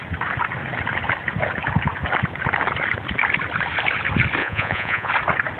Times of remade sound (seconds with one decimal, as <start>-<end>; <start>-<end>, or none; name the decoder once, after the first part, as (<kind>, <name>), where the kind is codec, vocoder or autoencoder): 4.4-5.1 (vocoder, Vocos)